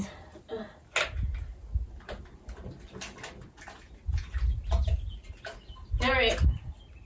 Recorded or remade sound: recorded